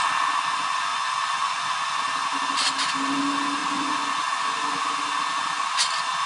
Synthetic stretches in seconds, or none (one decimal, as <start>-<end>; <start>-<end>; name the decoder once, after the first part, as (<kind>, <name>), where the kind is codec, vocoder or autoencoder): 0.9-2.0 (vocoder, Vocos); 3.6-4.8

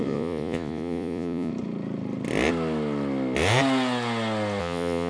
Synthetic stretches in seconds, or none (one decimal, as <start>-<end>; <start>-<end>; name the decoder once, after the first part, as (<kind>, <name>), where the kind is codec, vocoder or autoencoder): 0.0-1.5 (vocoder, Vocos); 4.6-5.1

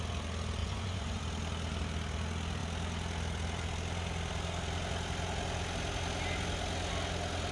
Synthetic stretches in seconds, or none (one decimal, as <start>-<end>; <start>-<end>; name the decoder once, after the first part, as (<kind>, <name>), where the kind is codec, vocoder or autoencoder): 0.6-1.2 (vocoder, Vocos)

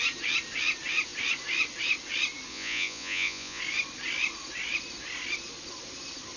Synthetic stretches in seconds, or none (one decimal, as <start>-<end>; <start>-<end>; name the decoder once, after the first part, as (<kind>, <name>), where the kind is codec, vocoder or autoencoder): 2.5-3.6 (vocoder, Vocos)

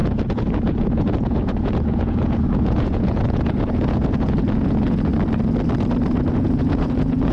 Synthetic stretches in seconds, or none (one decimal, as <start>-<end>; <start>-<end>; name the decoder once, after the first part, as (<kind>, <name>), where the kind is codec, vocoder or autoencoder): 0.0-5.1 (vocoder, Vocos); 6.3-7.3